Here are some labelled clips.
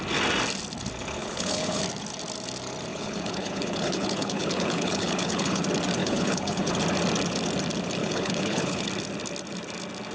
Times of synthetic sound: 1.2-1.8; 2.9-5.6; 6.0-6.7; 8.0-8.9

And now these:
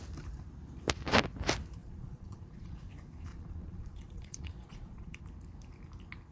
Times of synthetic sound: 1.8-2.9; 3.3-5.2

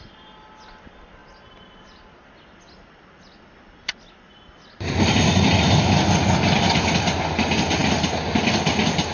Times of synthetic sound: none

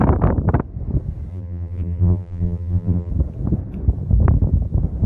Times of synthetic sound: 1.3-3.1